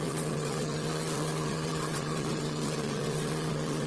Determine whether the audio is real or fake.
fake